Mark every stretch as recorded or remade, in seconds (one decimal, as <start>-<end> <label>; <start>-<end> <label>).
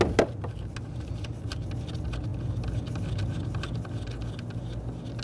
0.0-5.2 recorded